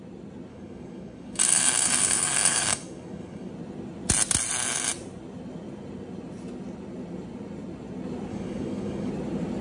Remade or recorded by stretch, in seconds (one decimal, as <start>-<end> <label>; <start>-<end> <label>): 0.0-0.5 recorded; 0.5-3.5 remade; 3.5-8.3 recorded; 8.3-9.1 remade; 9.1-9.6 recorded

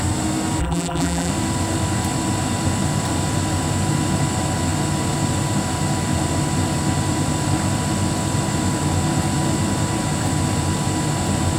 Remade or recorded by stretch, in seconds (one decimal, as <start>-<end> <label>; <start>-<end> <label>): 0.0-0.6 recorded; 0.6-1.3 remade; 1.3-11.6 recorded